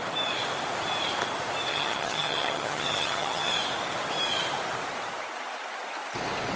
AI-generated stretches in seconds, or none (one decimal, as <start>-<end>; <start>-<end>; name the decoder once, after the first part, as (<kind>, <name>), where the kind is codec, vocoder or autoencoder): 1.7-3.5 (vocoder, HiFi-GAN)

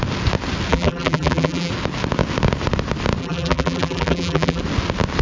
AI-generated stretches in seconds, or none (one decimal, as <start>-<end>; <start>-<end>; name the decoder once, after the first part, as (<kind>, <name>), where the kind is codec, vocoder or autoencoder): 0.7-1.7 (vocoder, BigVGAN v2); 3.2-4.6

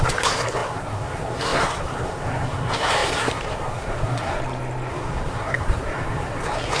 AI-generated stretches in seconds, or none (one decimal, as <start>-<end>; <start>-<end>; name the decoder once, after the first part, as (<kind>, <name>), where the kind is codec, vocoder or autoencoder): 0.0-4.4 (codec, SNAC); 4.9-6.8

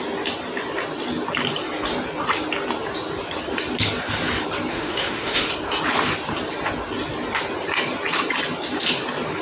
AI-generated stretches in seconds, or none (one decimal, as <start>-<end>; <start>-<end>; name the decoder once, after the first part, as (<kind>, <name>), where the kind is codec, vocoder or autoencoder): 4.7-5.5 (autoencoder, DAC-VAE)

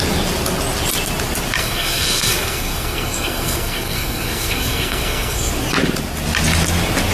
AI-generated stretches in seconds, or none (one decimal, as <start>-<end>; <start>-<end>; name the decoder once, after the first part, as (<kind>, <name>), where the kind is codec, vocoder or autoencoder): 1.6-5.5 (codec, SNAC)

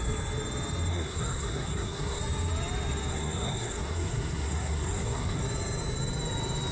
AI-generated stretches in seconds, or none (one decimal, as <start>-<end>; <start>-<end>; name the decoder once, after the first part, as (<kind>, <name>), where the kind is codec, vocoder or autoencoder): 0.9-2.2 (codec, SNAC); 3.1-5.4

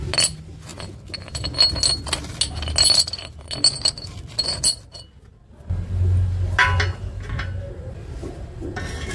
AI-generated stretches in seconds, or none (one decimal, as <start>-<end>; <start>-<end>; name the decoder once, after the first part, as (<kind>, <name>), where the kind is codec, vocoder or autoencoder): none